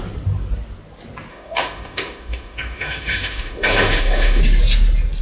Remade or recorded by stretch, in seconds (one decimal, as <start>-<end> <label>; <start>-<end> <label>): 0.0-1.3 recorded; 1.3-4.4 remade; 4.4-5.2 recorded